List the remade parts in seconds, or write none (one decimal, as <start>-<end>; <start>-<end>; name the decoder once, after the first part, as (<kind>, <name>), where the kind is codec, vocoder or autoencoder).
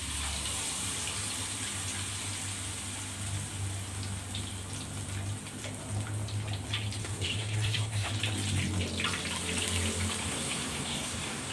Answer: 7.0-8.1 (codec, SNAC); 10.2-11.5